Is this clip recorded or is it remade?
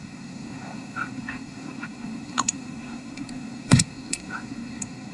remade